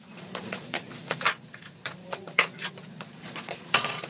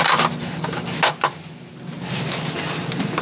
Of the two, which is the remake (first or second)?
first